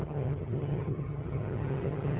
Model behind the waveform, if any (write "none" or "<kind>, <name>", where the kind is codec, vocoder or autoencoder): vocoder, HiFi-GAN